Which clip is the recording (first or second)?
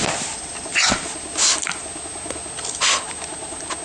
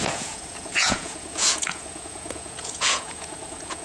first